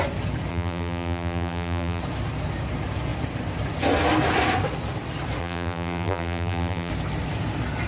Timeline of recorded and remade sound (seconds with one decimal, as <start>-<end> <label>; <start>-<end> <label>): 0.0-0.5 recorded; 0.5-2.0 remade; 2.0-5.4 recorded; 5.4-6.9 remade; 6.9-7.9 recorded

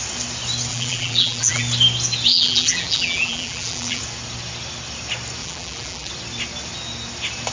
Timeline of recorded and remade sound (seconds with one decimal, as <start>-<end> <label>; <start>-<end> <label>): 0.0-0.7 recorded; 0.7-1.6 remade; 1.6-2.3 recorded; 2.3-4.0 remade; 4.0-5.4 recorded; 5.4-6.1 remade; 6.1-7.5 recorded

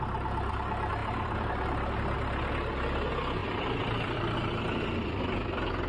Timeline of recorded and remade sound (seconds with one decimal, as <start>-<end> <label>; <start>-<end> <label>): 0.0-1.0 recorded; 1.0-1.5 remade; 1.5-3.4 recorded; 3.4-4.6 remade; 4.6-5.9 recorded